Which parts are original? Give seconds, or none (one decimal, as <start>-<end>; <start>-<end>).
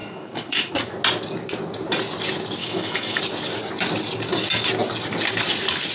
0.7-2.6; 3.2-5.9